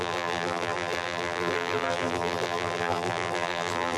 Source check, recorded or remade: remade